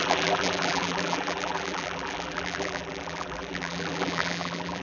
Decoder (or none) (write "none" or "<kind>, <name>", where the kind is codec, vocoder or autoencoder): vocoder, BigVGAN v2